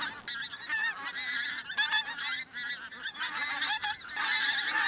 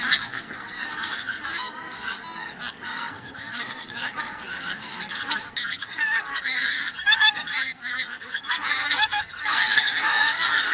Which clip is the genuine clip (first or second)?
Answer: first